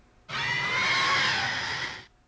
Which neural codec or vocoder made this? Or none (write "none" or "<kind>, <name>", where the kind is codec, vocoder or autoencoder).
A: none